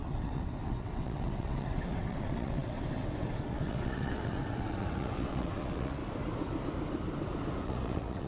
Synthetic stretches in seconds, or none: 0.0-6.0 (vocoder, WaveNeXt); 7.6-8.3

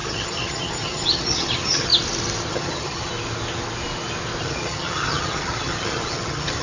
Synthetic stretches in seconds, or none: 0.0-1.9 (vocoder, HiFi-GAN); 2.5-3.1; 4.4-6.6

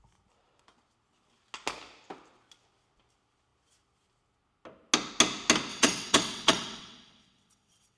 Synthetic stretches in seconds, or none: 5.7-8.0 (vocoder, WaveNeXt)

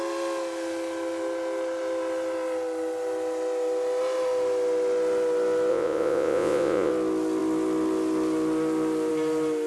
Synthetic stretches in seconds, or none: 5.7-6.9 (vocoder, Vocos)

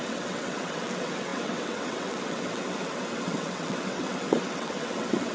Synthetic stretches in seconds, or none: 0.0-5.3 (vocoder, WaveNeXt)

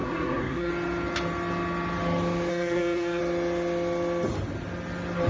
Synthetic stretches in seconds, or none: 0.0-0.7 (codec, SNAC); 2.5-3.2

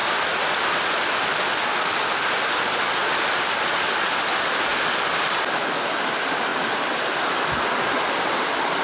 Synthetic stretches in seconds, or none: none

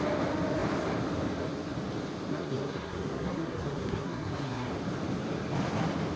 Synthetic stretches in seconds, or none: 2.3-4.7 (codec, SNAC)